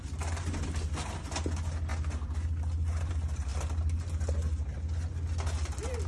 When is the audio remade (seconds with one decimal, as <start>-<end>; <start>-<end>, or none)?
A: none